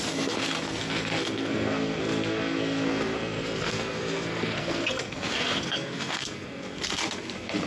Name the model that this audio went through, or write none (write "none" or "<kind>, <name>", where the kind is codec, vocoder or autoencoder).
codec, SNAC